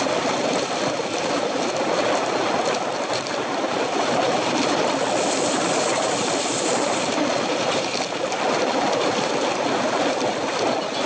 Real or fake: real